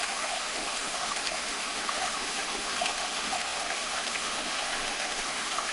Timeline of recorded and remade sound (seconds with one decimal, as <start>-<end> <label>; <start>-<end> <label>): 0.0-5.7 remade